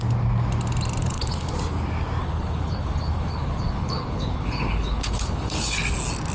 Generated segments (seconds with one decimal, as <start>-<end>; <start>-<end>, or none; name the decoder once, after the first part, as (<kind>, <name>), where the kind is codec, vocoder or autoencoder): 1.0-1.5 (codec, HILCodec); 2.2-5.8